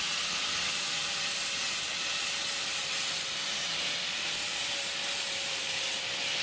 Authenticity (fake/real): fake